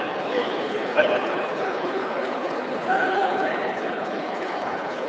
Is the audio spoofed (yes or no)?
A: yes